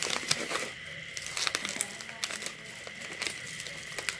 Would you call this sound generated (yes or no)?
no